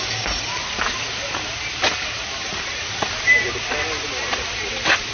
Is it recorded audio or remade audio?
recorded